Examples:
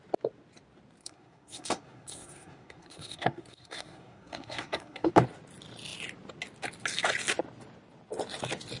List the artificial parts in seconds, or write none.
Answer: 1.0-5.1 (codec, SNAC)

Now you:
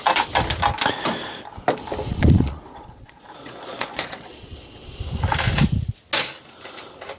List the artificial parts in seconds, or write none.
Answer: 2.1-5.0 (vocoder, Vocos)

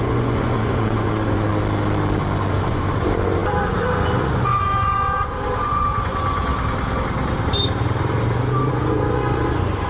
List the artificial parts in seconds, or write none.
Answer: 0.0-1.5 (vocoder, Vocos); 2.5-6.5; 8.7-9.9

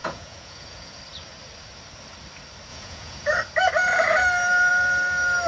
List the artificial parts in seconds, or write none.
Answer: 0.0-1.0 (vocoder, Vocos); 2.7-3.3

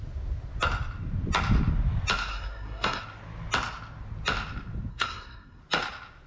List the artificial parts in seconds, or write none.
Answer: 2.3-3.0 (codec, SNAC); 4.9-5.6

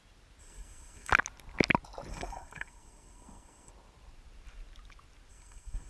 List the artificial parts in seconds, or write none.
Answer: 0.4-1.1 (codec, SNAC); 2.1-3.7; 5.3-5.9

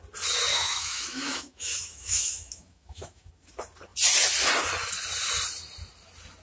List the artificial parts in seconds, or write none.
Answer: 0.5-3.3 (autoencoder, DAC-VAE)

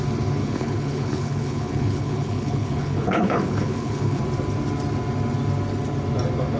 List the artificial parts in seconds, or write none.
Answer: 0.4-4.2 (codec, HILCodec)